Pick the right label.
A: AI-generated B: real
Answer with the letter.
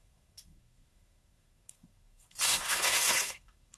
A